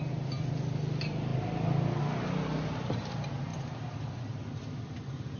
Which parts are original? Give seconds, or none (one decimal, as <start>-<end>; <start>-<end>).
0.0-5.4